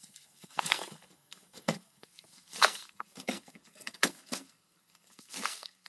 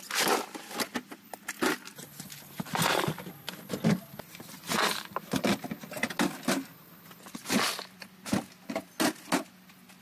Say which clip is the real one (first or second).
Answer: second